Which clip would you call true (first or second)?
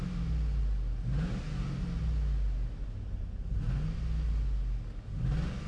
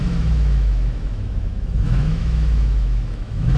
first